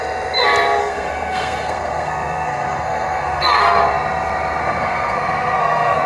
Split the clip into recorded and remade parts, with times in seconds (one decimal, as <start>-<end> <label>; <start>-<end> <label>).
0.0-0.8 recorded; 0.8-3.8 remade; 3.8-4.6 recorded; 4.6-6.1 remade